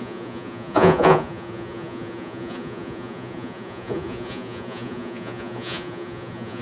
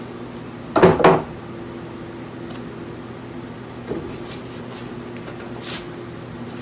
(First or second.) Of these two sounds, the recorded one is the second